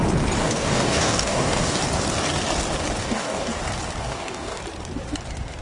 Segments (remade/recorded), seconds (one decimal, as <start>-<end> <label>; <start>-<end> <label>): 0.0-0.4 recorded; 0.4-1.8 remade; 1.8-3.0 recorded; 3.0-3.6 remade; 3.6-4.0 recorded; 4.0-4.6 remade; 4.6-5.6 recorded